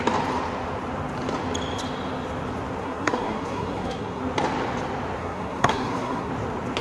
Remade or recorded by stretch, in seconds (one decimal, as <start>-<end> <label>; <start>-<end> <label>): 0.0-2.8 recorded; 2.8-4.2 remade; 4.2-5.2 recorded; 5.2-6.3 remade; 6.3-6.8 recorded

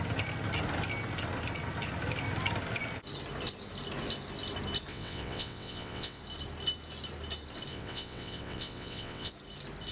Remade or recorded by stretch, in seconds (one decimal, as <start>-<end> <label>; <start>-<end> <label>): 0.0-4.9 recorded; 4.9-6.2 remade; 6.2-7.7 recorded; 7.7-9.3 remade; 9.3-9.9 recorded

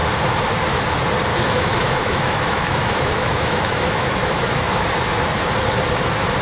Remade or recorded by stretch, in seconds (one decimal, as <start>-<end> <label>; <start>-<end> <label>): 0.0-1.3 recorded; 1.3-4.9 remade; 4.9-6.4 recorded

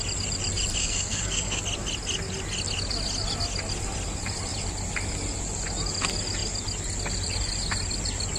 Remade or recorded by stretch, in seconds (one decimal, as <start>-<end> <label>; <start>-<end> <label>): 0.0-0.8 recorded; 0.8-1.6 remade; 1.6-8.4 recorded

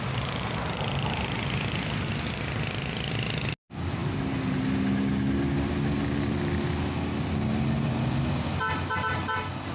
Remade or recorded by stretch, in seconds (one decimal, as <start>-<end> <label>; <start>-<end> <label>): 0.0-9.7 recorded